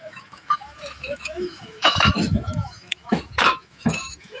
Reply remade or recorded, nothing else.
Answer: remade